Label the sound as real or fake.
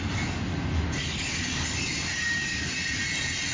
real